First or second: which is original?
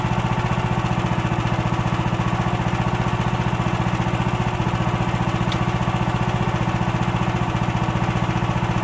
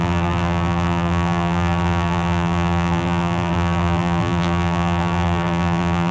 first